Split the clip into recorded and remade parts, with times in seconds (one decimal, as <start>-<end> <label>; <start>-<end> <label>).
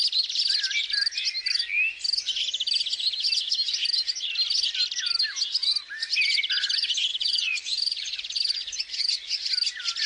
0.0-7.1 recorded; 7.1-9.4 remade; 9.4-10.1 recorded